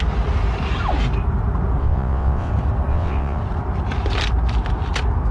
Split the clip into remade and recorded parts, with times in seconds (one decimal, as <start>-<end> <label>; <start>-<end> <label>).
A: 0.0-1.8 recorded; 1.8-2.5 remade; 2.5-2.9 recorded; 2.9-3.4 remade; 3.4-5.3 recorded